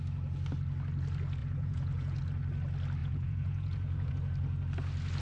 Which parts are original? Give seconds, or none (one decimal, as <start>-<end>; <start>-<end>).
0.0-1.4; 2.2-3.0; 4.1-5.2